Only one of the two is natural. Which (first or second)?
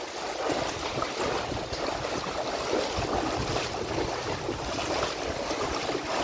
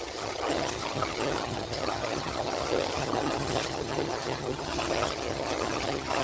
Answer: first